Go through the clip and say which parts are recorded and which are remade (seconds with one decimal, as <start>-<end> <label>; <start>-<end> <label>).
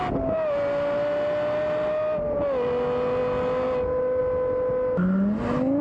0.0-5.8 recorded